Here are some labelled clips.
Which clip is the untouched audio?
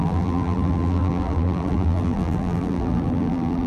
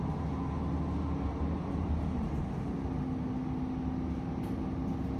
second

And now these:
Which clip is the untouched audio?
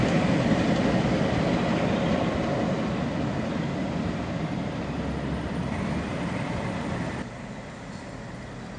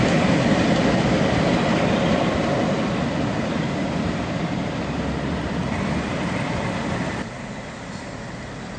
first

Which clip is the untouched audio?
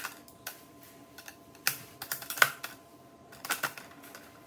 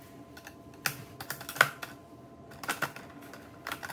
second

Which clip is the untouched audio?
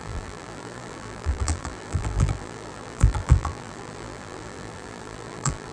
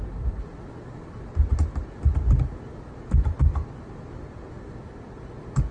second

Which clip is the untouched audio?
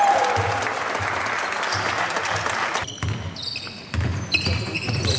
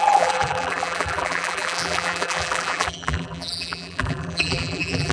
first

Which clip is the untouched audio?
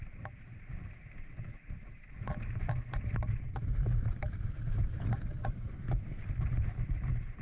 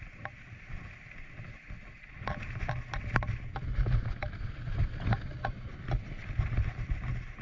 second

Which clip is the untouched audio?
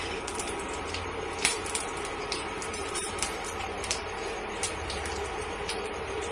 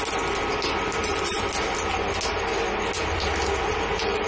second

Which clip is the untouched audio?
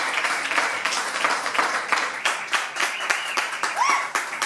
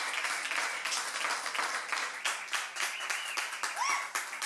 second